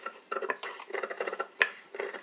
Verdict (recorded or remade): recorded